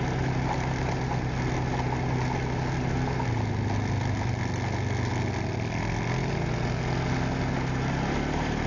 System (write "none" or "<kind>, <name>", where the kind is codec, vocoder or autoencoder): none